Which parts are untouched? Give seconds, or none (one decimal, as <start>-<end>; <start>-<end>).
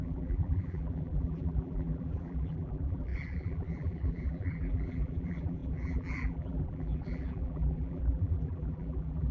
none